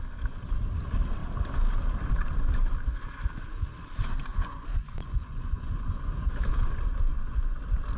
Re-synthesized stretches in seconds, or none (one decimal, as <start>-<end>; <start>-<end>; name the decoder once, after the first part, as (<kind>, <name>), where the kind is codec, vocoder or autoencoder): 4.3-6.3 (vocoder, Vocos); 7.1-7.6